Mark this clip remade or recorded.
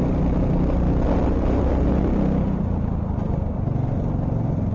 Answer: recorded